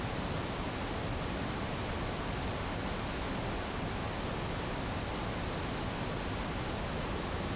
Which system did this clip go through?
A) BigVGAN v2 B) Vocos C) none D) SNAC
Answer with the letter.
C